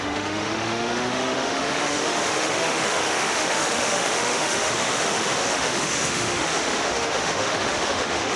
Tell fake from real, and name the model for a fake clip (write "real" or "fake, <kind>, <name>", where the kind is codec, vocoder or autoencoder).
fake, autoencoder, DAC-VAE